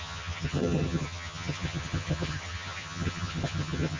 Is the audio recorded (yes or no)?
no